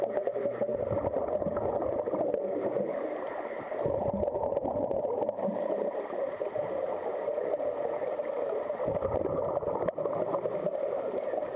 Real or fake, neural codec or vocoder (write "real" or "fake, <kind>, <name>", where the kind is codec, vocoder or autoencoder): real